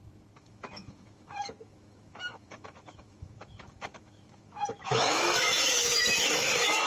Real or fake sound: fake